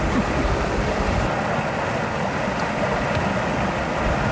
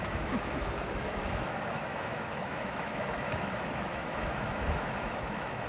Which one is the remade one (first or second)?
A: second